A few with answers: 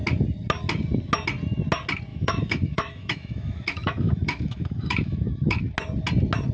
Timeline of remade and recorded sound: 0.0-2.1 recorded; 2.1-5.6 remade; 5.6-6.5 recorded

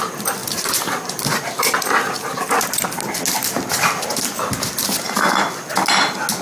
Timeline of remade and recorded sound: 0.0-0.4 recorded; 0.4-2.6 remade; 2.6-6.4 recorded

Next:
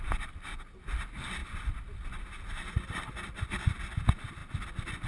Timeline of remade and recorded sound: 0.0-5.1 recorded

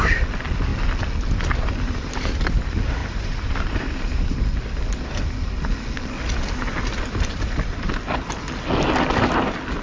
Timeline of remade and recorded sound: 0.0-3.0 recorded; 3.0-4.4 remade; 4.4-9.8 recorded

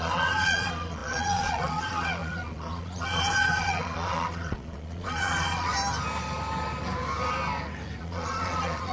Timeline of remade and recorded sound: 0.0-5.7 remade; 5.7-8.0 recorded; 8.0-8.9 remade